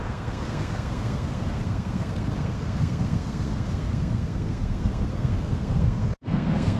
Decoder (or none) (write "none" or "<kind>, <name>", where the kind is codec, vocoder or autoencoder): codec, SNAC